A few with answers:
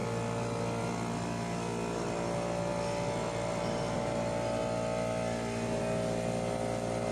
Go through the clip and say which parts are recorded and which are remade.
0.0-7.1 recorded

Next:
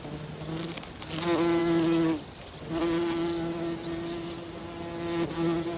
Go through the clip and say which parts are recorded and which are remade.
0.0-5.8 recorded

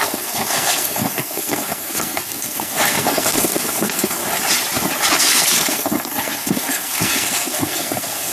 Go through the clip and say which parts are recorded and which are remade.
0.0-4.2 remade; 4.2-5.2 recorded; 5.2-8.3 remade

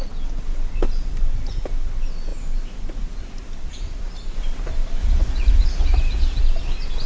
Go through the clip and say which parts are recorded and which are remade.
0.0-5.0 recorded; 5.0-6.4 remade; 6.4-7.1 recorded

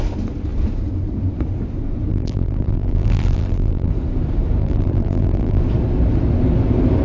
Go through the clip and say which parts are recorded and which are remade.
0.0-2.1 recorded; 2.1-3.9 remade; 3.9-4.6 recorded; 4.6-5.6 remade; 5.6-7.0 recorded